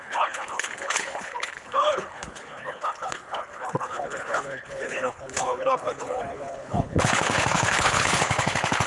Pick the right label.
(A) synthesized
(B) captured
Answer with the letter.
A